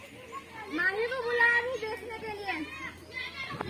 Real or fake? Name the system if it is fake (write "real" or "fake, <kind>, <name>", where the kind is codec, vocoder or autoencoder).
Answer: real